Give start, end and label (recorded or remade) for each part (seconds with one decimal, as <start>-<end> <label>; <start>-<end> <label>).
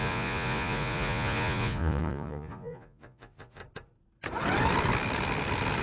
0.0-3.6 remade; 3.6-5.8 recorded